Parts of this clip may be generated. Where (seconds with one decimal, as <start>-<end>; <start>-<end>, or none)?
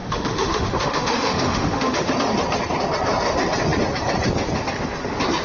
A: 0.0-2.1